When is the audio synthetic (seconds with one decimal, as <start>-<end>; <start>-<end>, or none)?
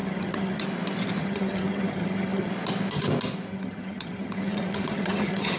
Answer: 0.0-0.6; 1.2-2.5; 3.5-5.6